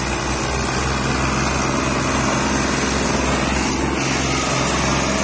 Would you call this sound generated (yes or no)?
no